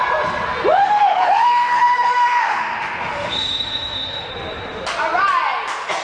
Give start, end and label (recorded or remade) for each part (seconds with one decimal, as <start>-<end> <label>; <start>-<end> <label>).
0.0-0.8 recorded; 0.8-4.3 remade; 4.3-6.0 recorded